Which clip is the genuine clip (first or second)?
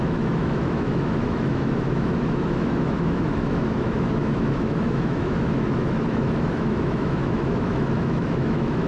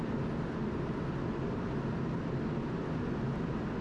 second